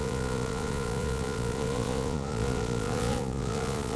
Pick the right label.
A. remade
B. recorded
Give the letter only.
A